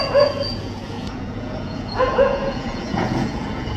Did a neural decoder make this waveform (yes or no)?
yes